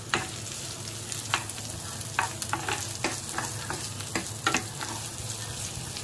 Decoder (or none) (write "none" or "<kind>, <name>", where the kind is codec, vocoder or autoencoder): none